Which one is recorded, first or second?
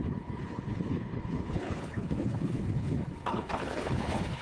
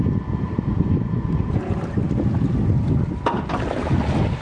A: second